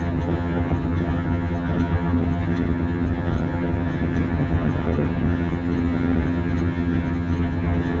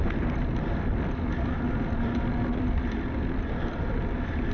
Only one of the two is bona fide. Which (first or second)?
second